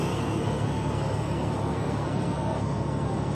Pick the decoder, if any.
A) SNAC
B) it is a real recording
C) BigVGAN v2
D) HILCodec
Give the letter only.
A